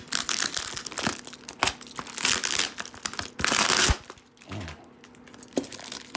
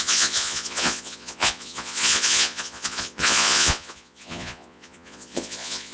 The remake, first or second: second